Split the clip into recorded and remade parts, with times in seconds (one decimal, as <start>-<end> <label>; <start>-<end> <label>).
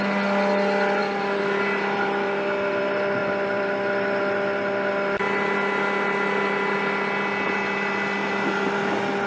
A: 0.0-1.0 recorded; 1.0-2.8 remade; 2.8-3.2 recorded; 3.2-4.9 remade; 4.9-8.2 recorded; 8.2-8.8 remade; 8.8-9.3 recorded